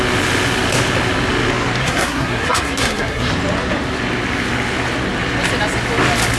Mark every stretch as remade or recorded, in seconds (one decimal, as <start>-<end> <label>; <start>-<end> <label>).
0.0-1.8 recorded; 1.8-3.3 remade; 3.3-6.4 recorded